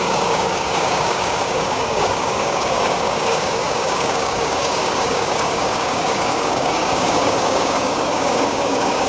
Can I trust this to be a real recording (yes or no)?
no